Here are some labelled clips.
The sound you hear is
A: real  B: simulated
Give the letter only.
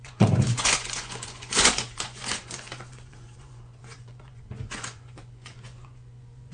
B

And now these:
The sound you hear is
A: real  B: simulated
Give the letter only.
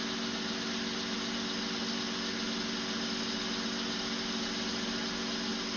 A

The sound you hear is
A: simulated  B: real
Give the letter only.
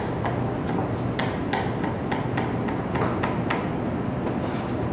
B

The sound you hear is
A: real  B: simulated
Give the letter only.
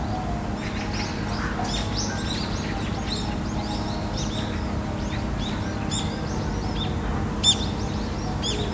A